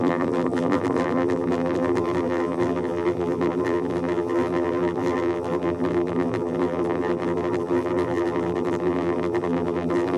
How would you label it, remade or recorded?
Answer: remade